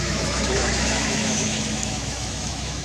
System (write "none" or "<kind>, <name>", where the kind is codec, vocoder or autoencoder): autoencoder, DAC-VAE